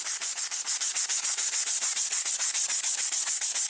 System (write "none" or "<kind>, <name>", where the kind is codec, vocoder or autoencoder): none